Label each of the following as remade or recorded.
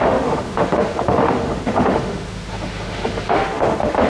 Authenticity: remade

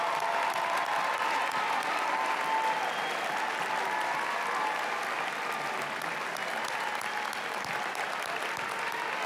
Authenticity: recorded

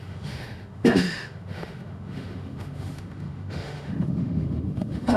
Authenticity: remade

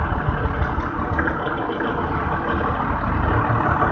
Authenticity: recorded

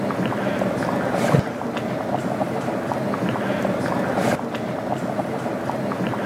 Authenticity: recorded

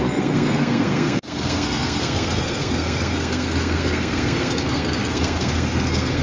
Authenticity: remade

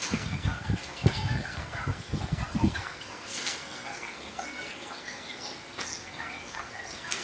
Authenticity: remade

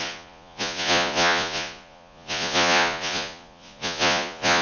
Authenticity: remade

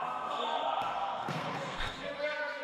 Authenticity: remade